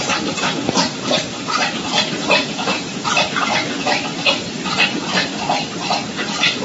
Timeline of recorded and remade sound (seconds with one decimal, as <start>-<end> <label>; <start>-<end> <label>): 0.0-2.2 recorded; 2.2-3.1 remade; 3.1-6.6 recorded